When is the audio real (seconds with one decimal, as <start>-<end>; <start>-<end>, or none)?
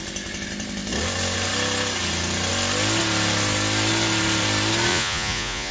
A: 0.0-4.9